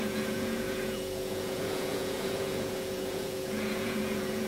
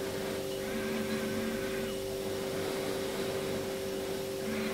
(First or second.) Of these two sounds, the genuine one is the second